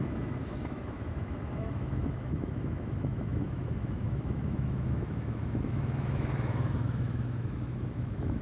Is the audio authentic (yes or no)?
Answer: no